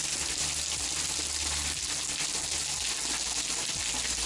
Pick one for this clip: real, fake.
real